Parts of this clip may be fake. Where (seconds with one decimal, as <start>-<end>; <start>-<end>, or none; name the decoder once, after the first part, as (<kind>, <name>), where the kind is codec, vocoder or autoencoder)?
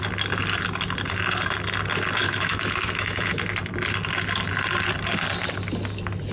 2.2-3.3 (autoencoder, DAC-VAE)